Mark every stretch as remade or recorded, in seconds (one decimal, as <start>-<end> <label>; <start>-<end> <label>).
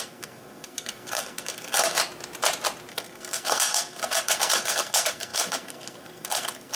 0.0-2.0 remade; 2.0-2.9 recorded; 2.9-6.8 remade